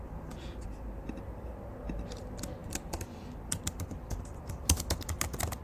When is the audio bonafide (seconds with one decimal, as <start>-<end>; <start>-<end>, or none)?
0.0-5.6